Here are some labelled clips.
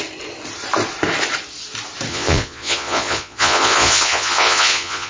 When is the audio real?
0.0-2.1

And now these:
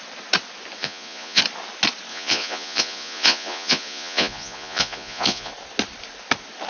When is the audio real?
0.0-0.8; 1.4-2.1; 5.5-6.7